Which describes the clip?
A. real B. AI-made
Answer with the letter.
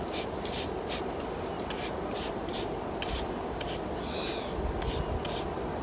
A